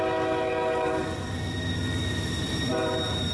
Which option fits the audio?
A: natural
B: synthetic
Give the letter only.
A